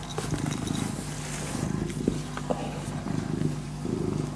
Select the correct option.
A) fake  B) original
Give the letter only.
B